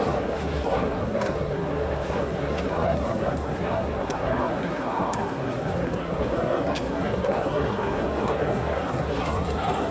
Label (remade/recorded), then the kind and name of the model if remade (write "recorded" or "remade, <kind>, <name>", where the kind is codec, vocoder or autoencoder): remade, codec, SNAC